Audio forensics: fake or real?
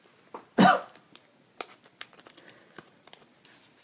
real